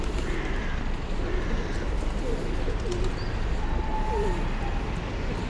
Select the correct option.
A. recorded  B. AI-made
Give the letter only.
A